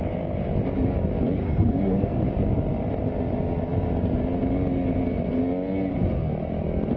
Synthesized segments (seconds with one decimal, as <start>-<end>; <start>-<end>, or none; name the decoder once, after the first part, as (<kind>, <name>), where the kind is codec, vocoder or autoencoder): 1.4-2.2 (codec, SNAC)